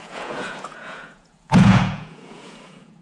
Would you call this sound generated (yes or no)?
yes